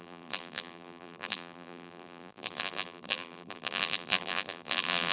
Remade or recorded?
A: remade